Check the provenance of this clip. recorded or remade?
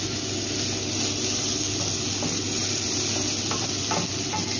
recorded